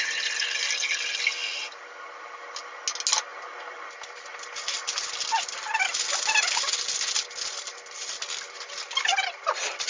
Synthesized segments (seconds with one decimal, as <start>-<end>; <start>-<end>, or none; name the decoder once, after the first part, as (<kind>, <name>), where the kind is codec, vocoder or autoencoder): none